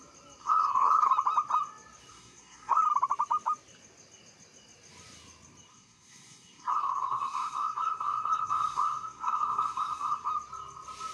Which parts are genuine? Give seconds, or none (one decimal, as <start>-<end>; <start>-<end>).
0.0-0.4; 1.1-2.1; 2.8-5.7; 10.3-11.1